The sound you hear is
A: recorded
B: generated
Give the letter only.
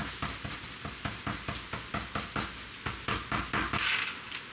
A